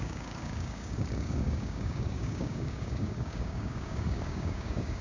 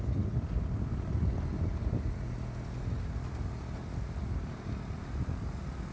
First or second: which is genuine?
second